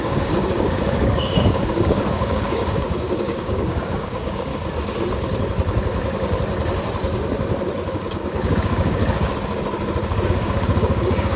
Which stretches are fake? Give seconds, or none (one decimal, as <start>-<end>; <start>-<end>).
0.0-4.5; 7.9-9.0; 10.3-11.4